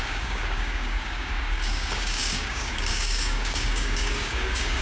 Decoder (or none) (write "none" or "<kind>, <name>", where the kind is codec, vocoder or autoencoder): codec, DAC